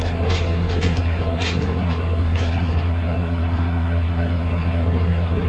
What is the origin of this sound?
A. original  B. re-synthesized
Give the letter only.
B